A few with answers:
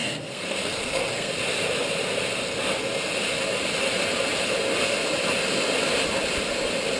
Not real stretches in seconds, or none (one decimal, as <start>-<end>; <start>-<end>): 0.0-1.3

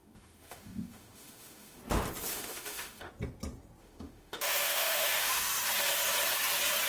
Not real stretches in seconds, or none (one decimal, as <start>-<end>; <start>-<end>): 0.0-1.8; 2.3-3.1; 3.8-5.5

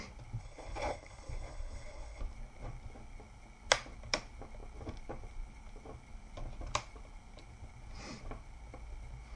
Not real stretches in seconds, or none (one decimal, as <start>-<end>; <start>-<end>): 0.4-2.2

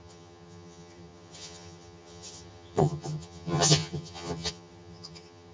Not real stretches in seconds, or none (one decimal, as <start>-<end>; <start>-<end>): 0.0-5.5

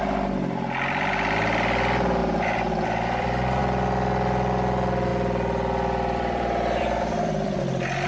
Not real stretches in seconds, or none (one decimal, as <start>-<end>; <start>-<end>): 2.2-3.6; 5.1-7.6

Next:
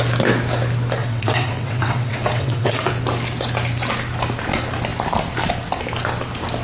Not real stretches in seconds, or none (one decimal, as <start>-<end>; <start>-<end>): 1.0-2.9

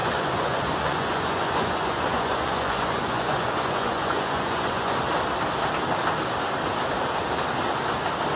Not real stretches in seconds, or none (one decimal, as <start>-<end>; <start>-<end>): 0.0-5.0

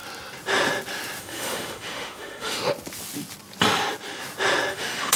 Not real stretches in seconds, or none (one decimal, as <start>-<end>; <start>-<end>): 1.2-2.6; 4.7-5.2